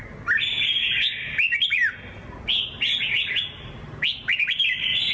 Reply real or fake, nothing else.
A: real